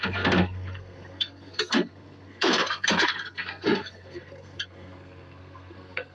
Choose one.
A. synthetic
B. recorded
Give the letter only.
A